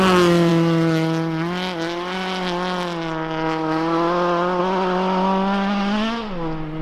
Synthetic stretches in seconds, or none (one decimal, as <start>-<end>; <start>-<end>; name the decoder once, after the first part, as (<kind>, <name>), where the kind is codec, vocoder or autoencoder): none